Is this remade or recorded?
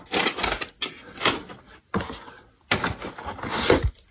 recorded